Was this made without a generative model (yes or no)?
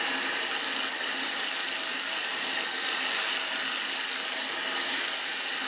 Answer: yes